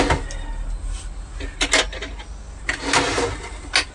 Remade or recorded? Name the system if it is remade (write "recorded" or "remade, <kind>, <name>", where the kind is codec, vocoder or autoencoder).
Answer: recorded